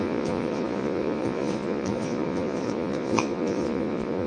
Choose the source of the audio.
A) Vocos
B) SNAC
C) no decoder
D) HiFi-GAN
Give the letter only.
A